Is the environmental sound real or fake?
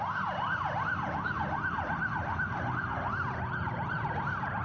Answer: real